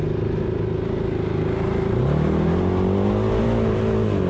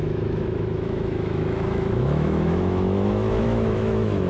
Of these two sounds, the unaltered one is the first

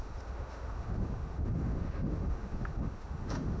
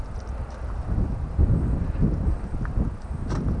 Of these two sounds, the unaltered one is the second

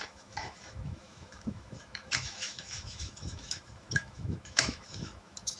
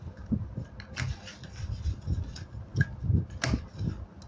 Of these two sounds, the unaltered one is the second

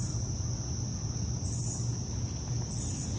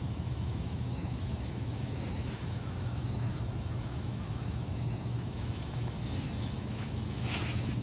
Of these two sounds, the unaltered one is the first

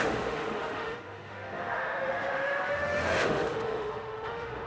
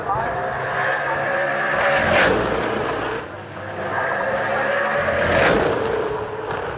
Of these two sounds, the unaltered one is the second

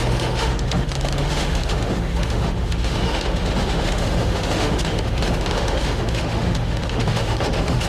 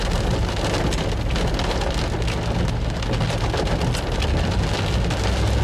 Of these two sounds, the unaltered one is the second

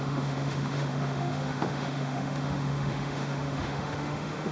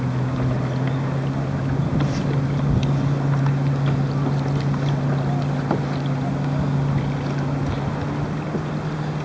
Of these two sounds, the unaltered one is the second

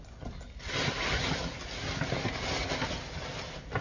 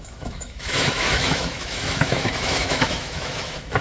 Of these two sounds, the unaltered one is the first